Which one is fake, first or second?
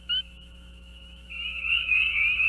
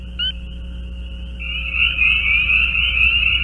first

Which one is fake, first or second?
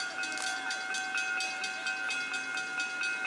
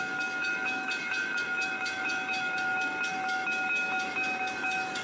second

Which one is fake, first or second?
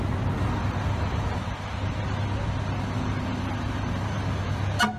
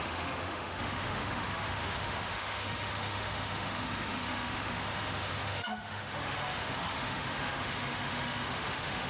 second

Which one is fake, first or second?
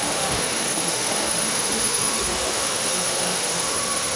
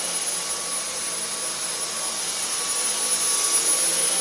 first